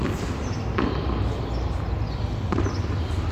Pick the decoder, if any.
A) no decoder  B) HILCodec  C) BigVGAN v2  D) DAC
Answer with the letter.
A